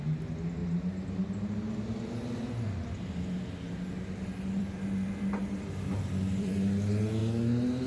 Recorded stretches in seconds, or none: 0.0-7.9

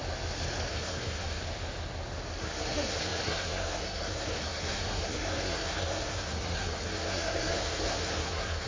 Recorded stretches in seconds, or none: 0.0-0.7; 1.4-2.4

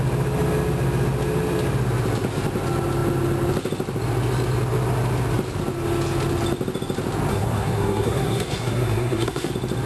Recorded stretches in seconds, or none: 0.0-7.3; 9.5-9.9

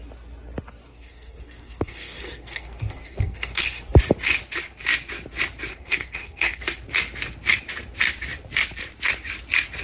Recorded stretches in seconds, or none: 0.0-0.9; 3.8-5.7; 6.6-9.8

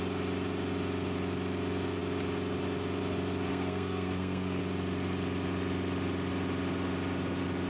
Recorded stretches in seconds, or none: 0.0-3.5; 4.6-7.7

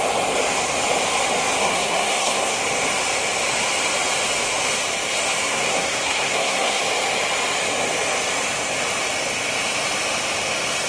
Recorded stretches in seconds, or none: 0.0-1.6; 2.6-5.4; 6.8-10.9

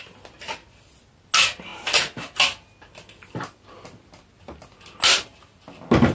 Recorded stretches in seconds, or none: 0.0-6.1